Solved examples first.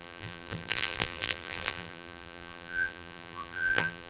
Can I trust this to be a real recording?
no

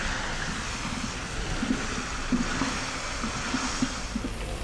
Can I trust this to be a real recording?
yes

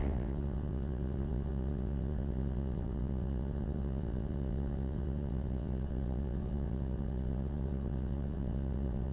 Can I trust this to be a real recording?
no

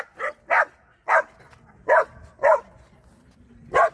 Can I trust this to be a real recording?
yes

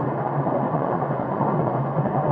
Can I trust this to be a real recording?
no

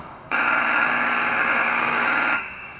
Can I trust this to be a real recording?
no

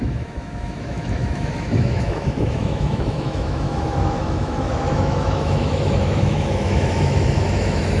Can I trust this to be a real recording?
no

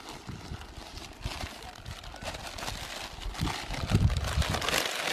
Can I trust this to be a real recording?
yes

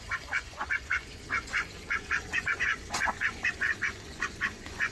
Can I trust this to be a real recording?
no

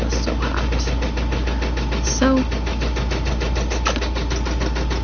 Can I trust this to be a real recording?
yes